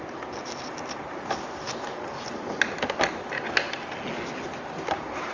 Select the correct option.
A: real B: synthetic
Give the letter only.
A